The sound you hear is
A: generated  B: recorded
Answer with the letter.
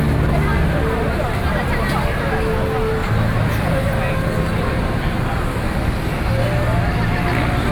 B